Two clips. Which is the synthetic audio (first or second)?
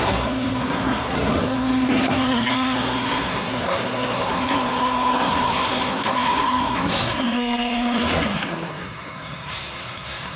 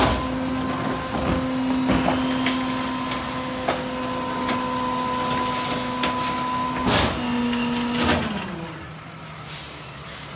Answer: first